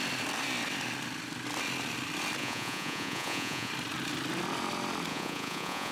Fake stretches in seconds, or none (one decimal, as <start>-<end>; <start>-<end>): 2.4-3.7; 5.1-5.9